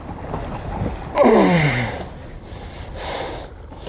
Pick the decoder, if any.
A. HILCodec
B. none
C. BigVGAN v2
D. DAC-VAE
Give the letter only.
C